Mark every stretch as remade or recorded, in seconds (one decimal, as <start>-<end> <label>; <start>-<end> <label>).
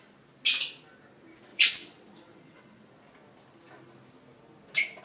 0.0-1.5 recorded; 1.5-2.9 remade; 2.9-5.0 recorded